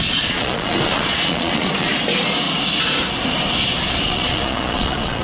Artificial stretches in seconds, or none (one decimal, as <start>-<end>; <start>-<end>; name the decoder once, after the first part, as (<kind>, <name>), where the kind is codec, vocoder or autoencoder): 0.0-1.9 (vocoder, Vocos); 4.0-5.2